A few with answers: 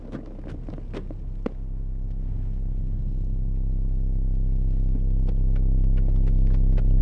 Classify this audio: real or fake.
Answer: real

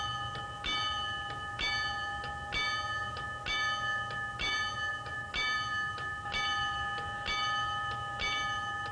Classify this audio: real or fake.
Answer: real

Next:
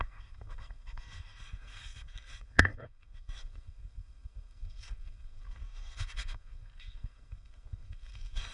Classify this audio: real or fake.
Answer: fake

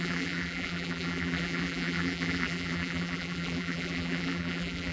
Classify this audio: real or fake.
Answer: fake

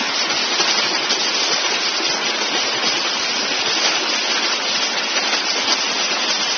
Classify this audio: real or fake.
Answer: real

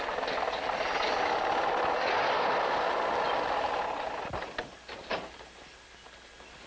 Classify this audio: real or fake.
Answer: real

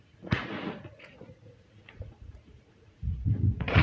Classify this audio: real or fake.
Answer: fake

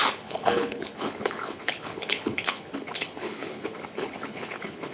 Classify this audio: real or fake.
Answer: fake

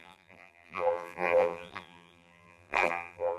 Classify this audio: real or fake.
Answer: fake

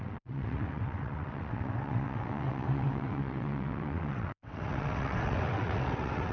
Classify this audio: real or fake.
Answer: fake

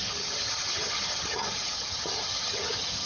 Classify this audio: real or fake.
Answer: fake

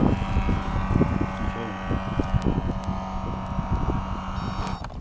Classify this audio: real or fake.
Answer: real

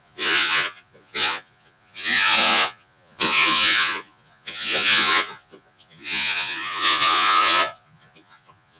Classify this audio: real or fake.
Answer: fake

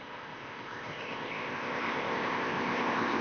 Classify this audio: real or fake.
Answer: fake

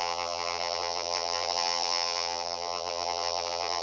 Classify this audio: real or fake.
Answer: fake